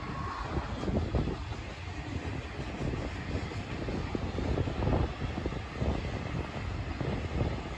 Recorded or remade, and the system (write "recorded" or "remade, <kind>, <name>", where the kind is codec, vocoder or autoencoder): recorded